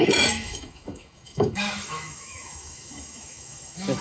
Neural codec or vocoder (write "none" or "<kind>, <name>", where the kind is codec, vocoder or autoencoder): autoencoder, DAC-VAE